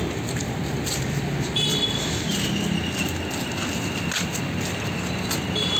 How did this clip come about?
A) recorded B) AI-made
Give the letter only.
A